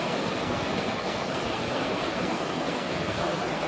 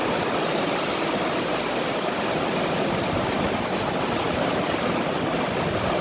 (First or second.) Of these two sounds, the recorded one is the second